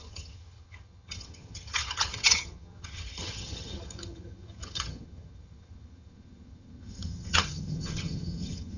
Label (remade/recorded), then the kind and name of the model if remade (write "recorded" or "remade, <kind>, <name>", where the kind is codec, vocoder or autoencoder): remade, vocoder, HiFi-GAN